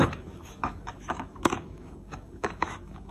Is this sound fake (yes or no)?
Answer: yes